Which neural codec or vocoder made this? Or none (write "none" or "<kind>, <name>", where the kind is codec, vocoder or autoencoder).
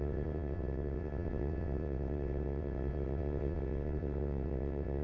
vocoder, WaveNeXt